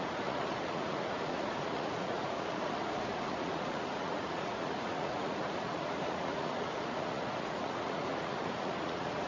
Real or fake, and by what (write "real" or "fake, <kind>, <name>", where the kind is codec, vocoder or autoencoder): fake, vocoder, Vocos